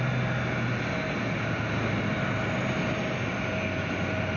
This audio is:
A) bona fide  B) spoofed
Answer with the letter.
A